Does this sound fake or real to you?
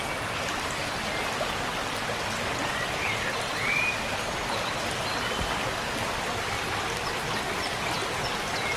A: real